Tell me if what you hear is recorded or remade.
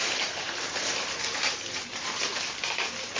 remade